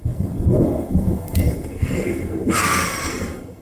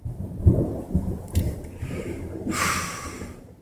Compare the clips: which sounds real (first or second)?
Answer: second